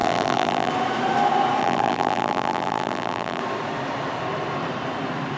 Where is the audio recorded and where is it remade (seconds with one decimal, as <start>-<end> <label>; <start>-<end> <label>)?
0.0-0.7 remade; 0.7-1.6 recorded; 1.6-3.4 remade; 3.4-5.4 recorded